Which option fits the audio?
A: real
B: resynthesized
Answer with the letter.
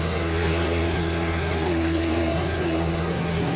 B